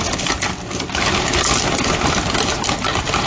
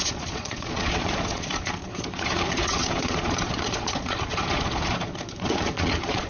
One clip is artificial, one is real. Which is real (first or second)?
first